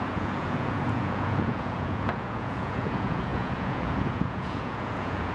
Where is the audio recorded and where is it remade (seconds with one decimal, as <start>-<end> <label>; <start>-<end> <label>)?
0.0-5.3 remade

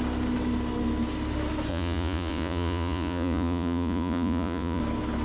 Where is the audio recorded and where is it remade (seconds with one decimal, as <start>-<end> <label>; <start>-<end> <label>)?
0.0-1.7 recorded; 1.7-4.8 remade; 4.8-5.2 recorded

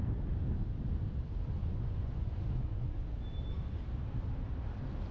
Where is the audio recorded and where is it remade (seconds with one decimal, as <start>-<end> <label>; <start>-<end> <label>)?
0.0-1.6 recorded; 1.6-3.1 remade; 3.1-5.1 recorded

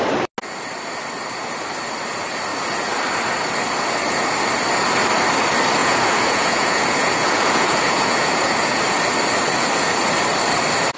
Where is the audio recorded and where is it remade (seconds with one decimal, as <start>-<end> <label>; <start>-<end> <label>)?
0.0-5.8 recorded; 5.8-8.8 remade; 8.8-11.0 recorded

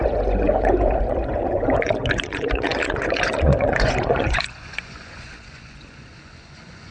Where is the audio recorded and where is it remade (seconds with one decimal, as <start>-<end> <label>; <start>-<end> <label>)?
0.0-6.9 remade

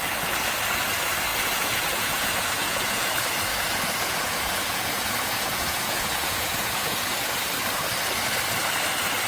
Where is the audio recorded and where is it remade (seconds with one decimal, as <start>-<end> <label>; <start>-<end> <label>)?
0.0-1.3 recorded; 1.3-3.1 remade; 3.1-3.5 recorded; 3.5-7.5 remade; 7.5-9.3 recorded